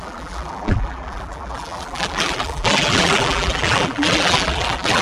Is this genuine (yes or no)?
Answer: no